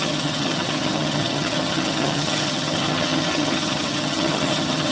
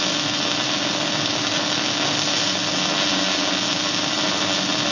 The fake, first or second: first